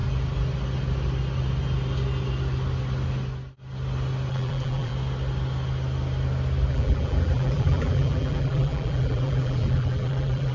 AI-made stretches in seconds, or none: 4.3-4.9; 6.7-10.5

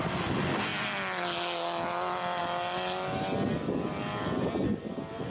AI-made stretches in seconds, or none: none